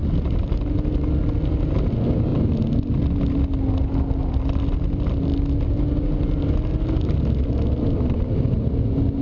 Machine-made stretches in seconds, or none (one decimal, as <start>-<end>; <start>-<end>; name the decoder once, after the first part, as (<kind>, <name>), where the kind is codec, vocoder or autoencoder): none